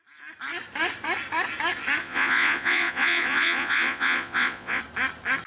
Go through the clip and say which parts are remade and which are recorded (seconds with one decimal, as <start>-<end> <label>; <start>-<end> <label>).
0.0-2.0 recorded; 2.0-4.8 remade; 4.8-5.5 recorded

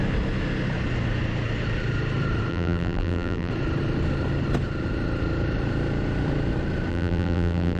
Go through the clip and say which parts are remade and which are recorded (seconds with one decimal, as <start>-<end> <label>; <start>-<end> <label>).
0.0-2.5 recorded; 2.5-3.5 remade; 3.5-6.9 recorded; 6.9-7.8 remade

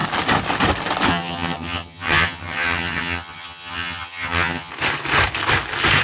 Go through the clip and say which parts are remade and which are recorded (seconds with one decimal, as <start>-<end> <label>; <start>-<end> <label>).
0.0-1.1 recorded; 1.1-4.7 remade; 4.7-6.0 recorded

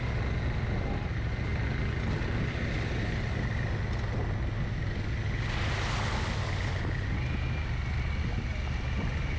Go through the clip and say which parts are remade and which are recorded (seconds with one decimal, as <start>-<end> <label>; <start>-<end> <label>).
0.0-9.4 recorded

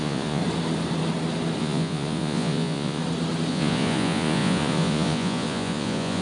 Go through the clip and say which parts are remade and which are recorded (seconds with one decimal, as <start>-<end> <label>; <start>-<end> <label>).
0.0-0.4 remade; 0.4-1.6 recorded; 1.6-3.0 remade; 3.0-3.5 recorded; 3.5-6.2 remade

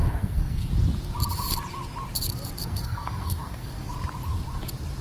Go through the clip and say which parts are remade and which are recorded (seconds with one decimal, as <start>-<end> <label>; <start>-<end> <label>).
0.0-0.7 remade; 0.7-2.6 recorded; 2.6-3.9 remade; 3.9-5.0 recorded

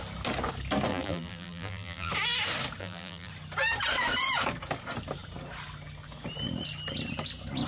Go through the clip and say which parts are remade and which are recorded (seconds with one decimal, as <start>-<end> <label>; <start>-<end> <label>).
0.0-0.9 recorded; 0.9-2.1 remade; 2.1-2.8 recorded; 2.8-3.3 remade; 3.3-7.7 recorded